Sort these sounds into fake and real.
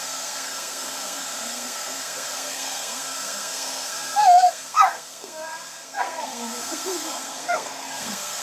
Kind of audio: fake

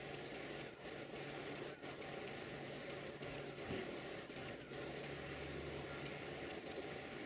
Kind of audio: real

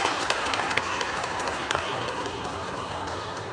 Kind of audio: fake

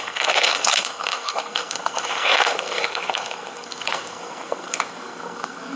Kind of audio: fake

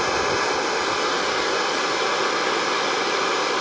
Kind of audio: real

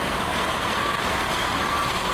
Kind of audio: fake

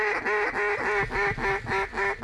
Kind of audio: real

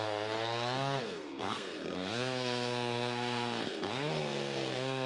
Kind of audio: fake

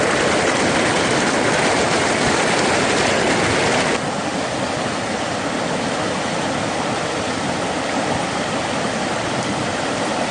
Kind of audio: real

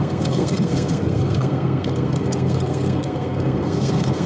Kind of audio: fake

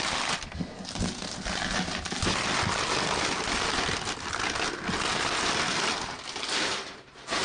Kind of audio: real